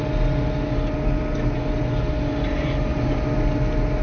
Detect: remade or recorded recorded